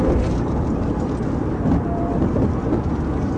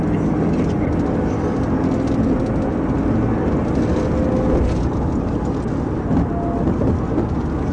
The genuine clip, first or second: second